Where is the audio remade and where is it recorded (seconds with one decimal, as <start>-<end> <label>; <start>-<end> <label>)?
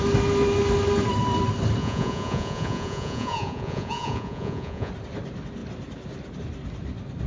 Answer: 0.0-1.8 recorded; 1.8-4.9 remade; 4.9-7.3 recorded